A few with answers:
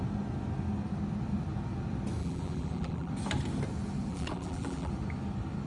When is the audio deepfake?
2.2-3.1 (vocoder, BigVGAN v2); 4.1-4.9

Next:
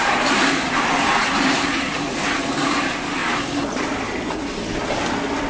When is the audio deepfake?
0.0-3.2 (vocoder, BigVGAN v2)

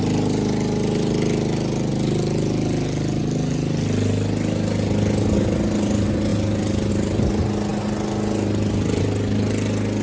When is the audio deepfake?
none

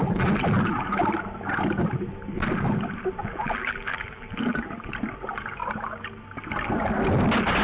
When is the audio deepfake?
0.0-1.0 (vocoder, BigVGAN v2); 3.2-4.7

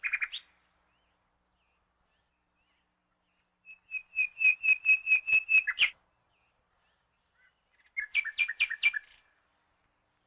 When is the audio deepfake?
none